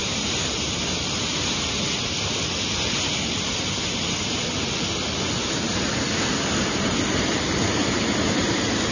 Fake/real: real